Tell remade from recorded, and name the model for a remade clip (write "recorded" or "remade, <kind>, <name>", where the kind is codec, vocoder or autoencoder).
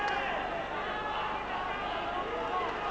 recorded